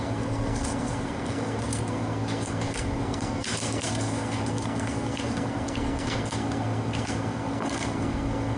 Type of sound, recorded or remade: remade